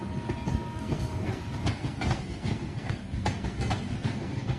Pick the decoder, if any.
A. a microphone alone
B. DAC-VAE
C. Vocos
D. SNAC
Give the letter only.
D